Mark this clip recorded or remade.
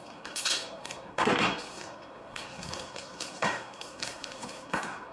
remade